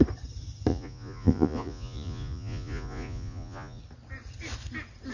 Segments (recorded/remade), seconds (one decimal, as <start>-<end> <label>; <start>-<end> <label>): 0.0-0.7 recorded; 0.7-3.8 remade; 3.8-5.1 recorded